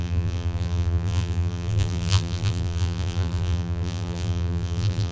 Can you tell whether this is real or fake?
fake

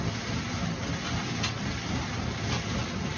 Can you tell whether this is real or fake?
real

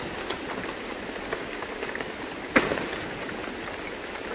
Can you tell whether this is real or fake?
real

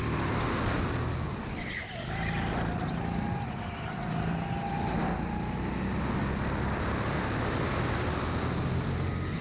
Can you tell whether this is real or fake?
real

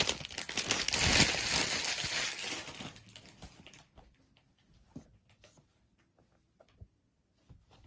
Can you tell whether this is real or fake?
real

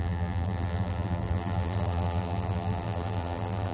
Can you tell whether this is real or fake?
fake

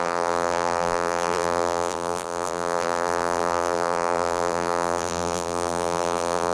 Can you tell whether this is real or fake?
fake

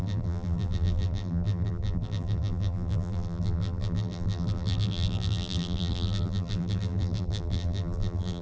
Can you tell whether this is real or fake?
fake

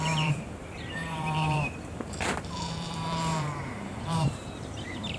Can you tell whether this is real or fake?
fake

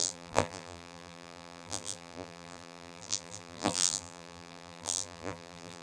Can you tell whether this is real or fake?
fake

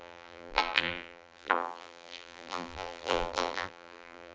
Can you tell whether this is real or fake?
fake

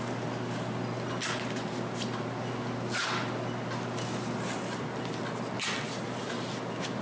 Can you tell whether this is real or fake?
real